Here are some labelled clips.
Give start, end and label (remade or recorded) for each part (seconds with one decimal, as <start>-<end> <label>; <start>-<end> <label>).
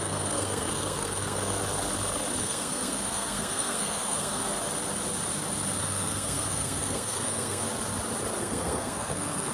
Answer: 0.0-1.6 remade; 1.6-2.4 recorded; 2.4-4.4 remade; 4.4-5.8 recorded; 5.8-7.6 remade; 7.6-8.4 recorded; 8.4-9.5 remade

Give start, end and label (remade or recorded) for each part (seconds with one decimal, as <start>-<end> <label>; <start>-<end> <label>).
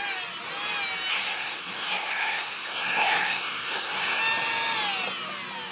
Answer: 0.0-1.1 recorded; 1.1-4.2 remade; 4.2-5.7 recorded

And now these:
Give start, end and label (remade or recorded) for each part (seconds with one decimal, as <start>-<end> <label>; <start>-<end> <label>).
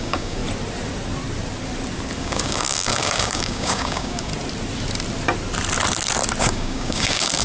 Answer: 0.0-0.4 remade; 0.4-2.2 recorded; 2.2-4.3 remade; 4.3-6.4 recorded; 6.4-7.4 remade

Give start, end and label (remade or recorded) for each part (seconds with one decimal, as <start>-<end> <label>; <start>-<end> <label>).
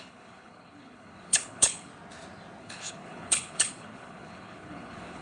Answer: 0.0-1.9 remade; 1.9-2.6 recorded; 2.6-5.2 remade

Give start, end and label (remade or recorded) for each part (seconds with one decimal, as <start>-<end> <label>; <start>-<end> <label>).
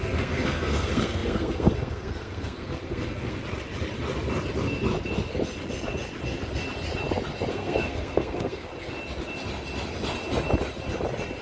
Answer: 0.0-3.4 remade; 3.4-7.5 recorded; 7.5-8.7 remade; 8.7-11.4 recorded